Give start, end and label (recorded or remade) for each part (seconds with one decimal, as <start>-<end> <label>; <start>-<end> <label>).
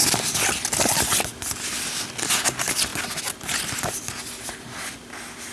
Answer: 0.0-5.5 recorded